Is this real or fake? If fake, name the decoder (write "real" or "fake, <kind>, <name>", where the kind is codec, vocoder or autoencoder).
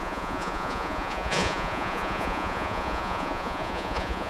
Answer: fake, vocoder, Vocos